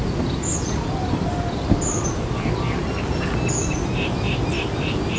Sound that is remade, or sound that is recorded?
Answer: recorded